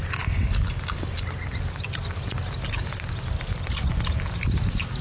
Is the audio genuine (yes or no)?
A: yes